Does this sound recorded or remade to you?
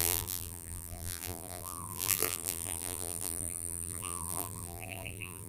remade